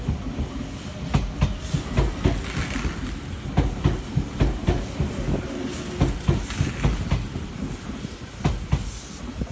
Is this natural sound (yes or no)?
yes